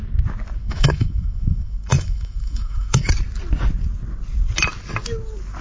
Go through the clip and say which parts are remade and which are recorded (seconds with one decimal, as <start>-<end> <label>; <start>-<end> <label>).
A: 0.0-0.6 recorded; 0.6-3.1 remade; 3.1-5.6 recorded